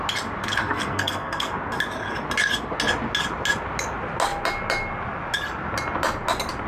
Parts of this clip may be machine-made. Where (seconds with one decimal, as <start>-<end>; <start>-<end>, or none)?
0.4-1.5

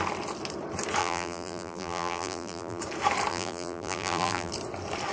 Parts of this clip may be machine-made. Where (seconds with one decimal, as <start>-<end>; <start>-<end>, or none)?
1.0-2.8; 3.3-4.5

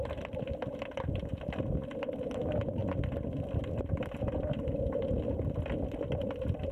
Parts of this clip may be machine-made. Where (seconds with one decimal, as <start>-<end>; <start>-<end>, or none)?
none